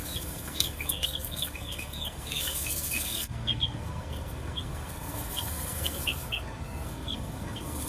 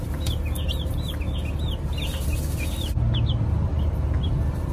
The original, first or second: second